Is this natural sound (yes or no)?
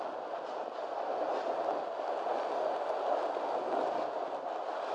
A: yes